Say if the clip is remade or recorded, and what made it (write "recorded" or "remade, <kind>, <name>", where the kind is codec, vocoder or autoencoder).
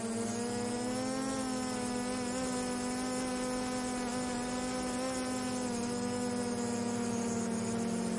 recorded